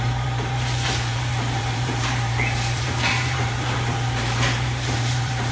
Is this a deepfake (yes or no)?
yes